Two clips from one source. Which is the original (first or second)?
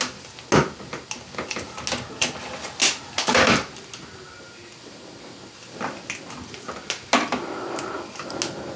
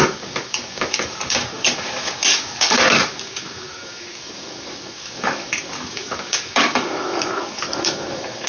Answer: first